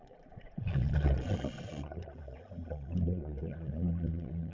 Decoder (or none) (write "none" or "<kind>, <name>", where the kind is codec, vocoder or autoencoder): vocoder, Vocos